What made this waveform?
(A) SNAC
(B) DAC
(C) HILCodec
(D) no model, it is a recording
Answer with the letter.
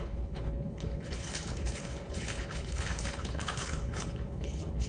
C